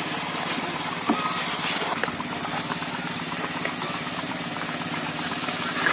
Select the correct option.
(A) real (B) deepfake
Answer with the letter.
B